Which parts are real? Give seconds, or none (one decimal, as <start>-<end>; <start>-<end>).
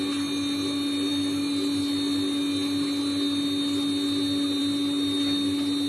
0.0-5.9